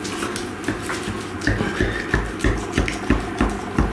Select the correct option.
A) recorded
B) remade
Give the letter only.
A